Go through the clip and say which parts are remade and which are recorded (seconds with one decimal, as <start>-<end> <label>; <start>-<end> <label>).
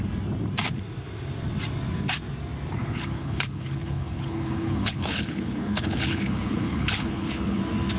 0.0-2.8 recorded; 2.8-7.6 remade; 7.6-8.0 recorded